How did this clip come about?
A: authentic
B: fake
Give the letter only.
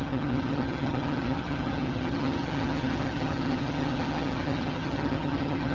B